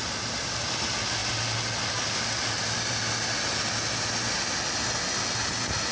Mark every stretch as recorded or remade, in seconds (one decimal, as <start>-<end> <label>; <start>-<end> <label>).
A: 0.0-5.9 recorded